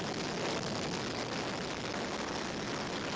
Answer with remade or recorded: recorded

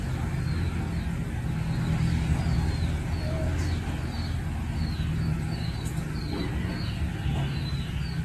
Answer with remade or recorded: recorded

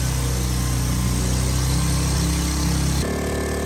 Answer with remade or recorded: recorded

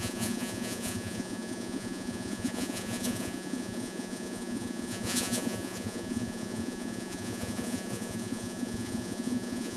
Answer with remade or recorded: remade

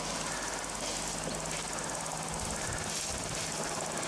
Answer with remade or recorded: recorded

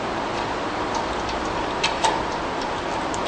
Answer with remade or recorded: recorded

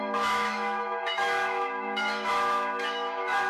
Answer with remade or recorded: remade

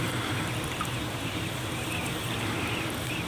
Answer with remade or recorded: recorded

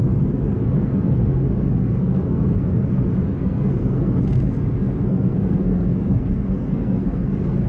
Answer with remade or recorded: remade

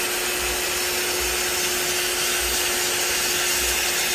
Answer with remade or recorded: recorded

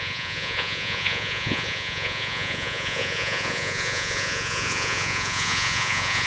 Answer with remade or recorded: remade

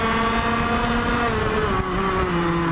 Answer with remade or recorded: recorded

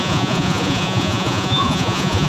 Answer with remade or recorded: remade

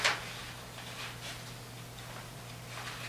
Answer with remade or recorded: recorded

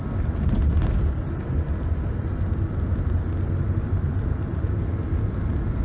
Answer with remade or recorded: recorded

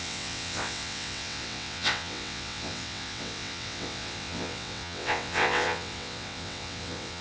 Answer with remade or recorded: remade